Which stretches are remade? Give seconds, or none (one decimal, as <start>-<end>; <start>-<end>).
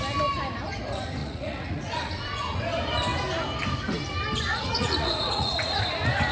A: 1.2-2.6; 4.5-5.8